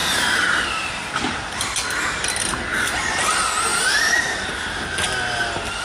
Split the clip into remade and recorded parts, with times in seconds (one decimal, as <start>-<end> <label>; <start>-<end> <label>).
0.0-1.1 remade; 1.1-3.7 recorded; 3.7-4.5 remade; 4.5-5.8 recorded